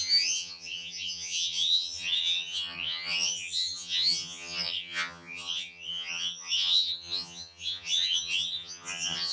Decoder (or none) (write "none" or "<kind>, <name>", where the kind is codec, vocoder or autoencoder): vocoder, HiFi-GAN